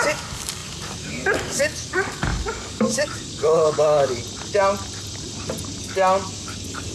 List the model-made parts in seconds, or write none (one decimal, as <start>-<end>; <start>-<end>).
0.0-4.2; 5.8-6.9